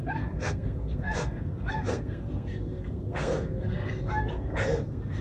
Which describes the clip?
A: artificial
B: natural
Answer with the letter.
A